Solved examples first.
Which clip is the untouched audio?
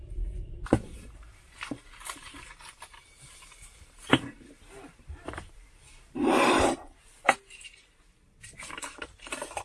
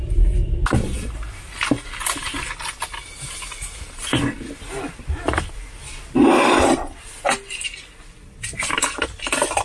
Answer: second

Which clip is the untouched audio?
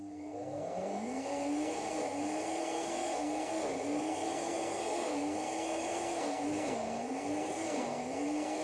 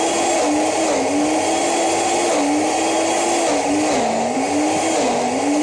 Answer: second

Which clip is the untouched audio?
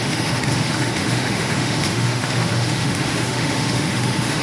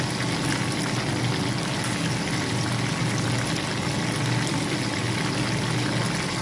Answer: second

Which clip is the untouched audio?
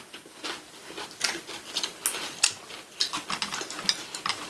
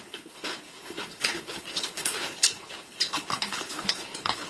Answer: first